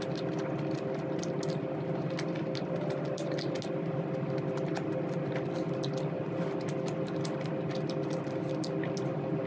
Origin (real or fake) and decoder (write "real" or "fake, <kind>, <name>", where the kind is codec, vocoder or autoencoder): real